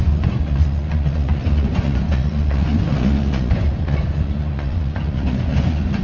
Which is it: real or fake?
fake